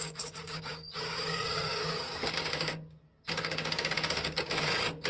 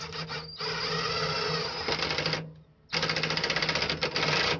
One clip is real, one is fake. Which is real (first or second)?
second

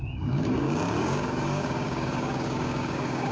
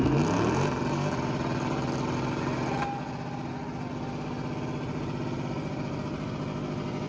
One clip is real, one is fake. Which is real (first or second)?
second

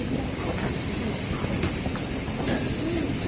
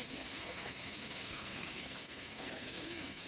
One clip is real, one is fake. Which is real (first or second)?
first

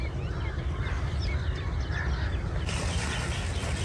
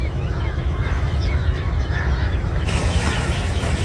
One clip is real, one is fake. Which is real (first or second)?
first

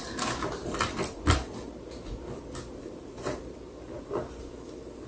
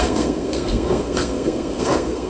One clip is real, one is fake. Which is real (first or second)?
first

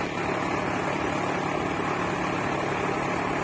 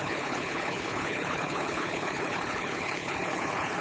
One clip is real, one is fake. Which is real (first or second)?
first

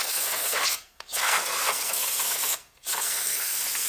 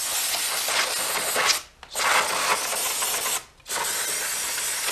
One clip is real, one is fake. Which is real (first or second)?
second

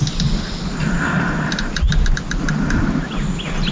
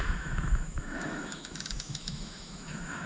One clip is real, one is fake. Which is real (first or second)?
first